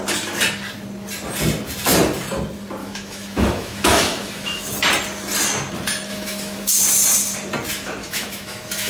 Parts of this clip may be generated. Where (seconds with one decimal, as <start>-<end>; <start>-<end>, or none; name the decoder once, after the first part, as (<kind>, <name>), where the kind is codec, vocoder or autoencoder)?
2.8-4.7 (autoencoder, DAC-VAE); 6.1-6.7; 8.0-8.9